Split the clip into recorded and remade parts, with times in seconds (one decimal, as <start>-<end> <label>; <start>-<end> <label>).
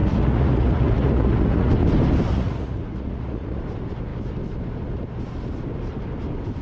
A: 0.0-1.7 remade; 1.7-2.3 recorded; 2.3-3.6 remade; 3.6-6.6 recorded